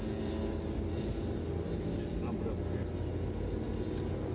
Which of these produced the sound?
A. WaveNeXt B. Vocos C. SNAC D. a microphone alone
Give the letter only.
D